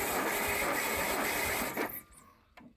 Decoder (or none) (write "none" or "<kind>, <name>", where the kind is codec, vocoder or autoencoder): none